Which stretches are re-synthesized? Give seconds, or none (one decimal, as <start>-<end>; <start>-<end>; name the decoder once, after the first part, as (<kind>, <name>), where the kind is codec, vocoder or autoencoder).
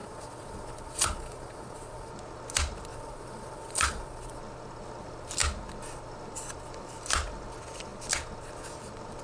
0.0-2.1 (vocoder, Vocos); 2.9-4.4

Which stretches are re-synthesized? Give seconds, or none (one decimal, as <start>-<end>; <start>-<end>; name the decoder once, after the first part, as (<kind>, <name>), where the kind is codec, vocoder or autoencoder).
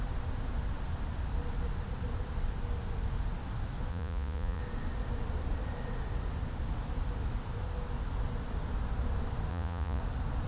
3.9-4.6 (vocoder, Vocos); 9.5-10.0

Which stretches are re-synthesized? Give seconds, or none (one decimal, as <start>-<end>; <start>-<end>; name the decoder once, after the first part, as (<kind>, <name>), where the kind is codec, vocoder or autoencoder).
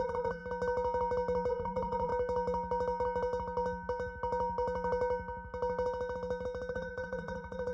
0.0-0.4 (vocoder, Vocos); 1.5-2.1; 6.7-7.7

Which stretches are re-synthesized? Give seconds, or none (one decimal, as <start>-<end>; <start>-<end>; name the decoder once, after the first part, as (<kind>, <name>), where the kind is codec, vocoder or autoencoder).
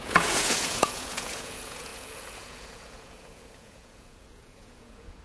0.0-5.2 (vocoder, Vocos)